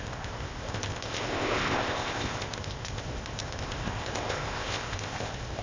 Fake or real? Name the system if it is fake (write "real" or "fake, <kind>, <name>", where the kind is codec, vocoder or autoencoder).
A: fake, codec, ZipCodec